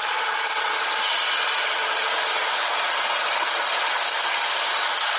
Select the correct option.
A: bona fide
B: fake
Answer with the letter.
A